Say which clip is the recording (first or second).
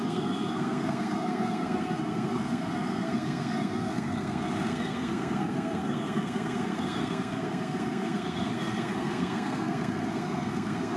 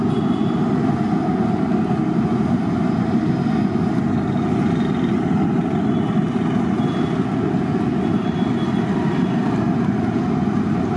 second